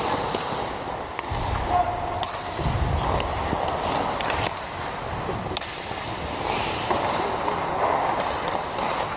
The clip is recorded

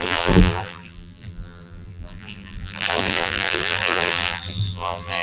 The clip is remade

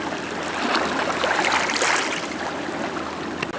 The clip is recorded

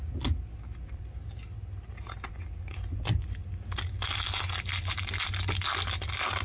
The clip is recorded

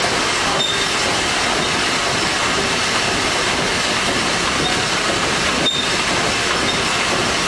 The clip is recorded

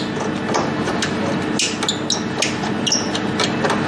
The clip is recorded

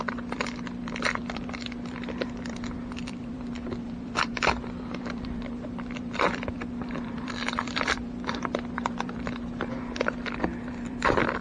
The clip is remade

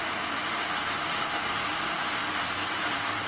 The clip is recorded